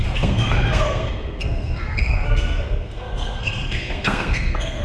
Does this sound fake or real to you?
fake